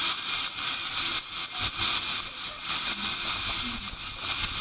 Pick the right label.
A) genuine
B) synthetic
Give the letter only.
A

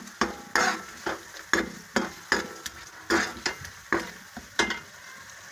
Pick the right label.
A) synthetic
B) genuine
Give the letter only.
B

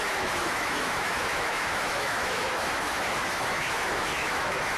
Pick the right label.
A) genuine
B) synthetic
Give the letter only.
B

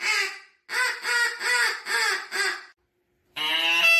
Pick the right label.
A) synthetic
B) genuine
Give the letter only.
B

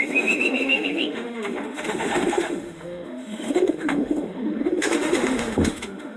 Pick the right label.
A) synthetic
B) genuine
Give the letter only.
A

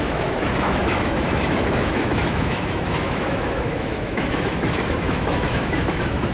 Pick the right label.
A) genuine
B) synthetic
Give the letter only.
B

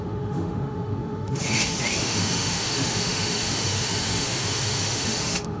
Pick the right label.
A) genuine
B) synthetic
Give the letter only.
B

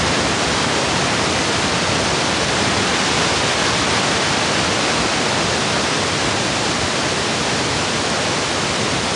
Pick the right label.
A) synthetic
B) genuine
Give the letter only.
B